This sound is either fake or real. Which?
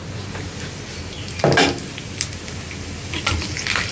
real